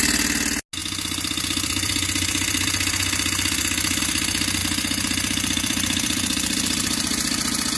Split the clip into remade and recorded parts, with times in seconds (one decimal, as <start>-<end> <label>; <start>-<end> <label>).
0.0-0.8 recorded; 0.8-4.0 remade; 4.0-4.6 recorded; 4.6-7.8 remade